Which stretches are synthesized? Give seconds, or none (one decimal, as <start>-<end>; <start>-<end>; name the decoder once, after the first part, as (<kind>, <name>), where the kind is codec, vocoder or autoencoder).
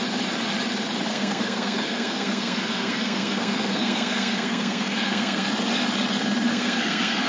1.1-5.5 (codec, SNAC); 6.5-7.3